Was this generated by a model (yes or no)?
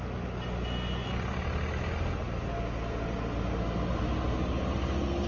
no